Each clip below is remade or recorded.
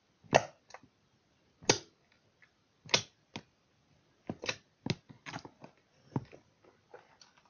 recorded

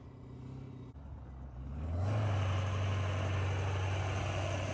recorded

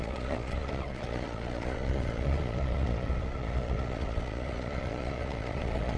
remade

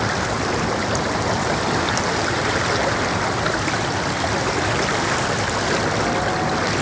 recorded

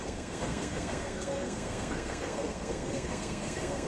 remade